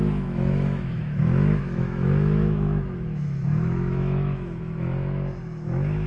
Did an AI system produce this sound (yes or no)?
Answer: yes